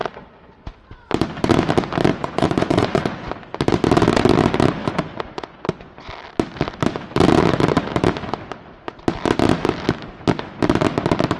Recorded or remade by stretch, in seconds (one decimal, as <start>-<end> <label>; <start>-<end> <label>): 0.0-2.1 recorded; 2.1-3.3 remade; 3.3-4.8 recorded; 4.8-6.1 remade; 6.1-11.4 recorded